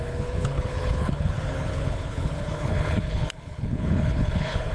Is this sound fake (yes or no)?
yes